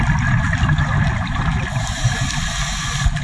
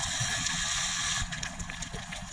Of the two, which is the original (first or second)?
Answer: first